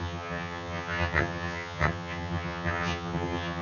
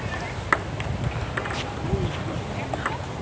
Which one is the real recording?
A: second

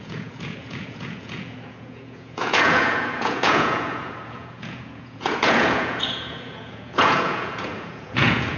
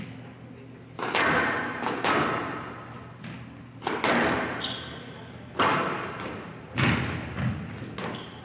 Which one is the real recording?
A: second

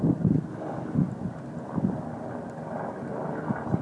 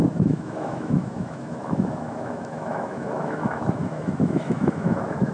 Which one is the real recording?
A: first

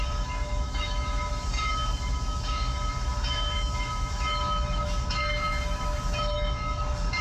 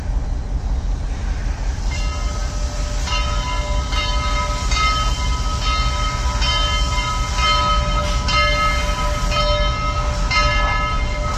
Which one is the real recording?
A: second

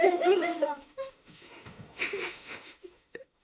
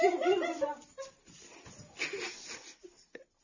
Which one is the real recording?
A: second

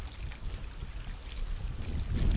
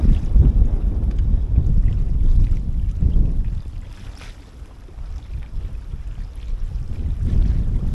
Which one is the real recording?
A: first